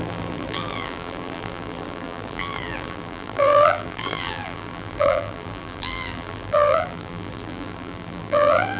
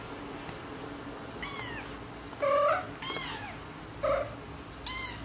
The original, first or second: second